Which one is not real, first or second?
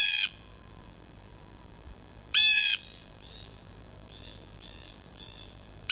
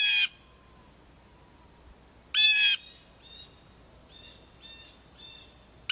first